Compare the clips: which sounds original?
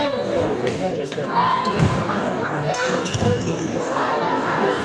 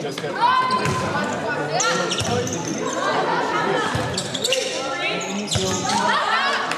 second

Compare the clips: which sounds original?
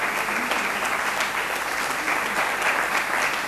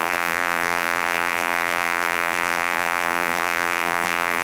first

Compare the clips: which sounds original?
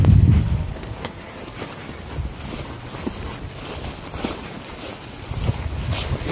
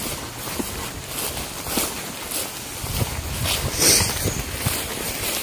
second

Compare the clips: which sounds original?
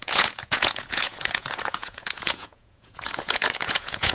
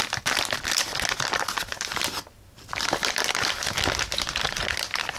second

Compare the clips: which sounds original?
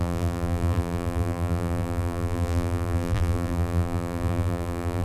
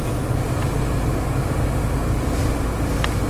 second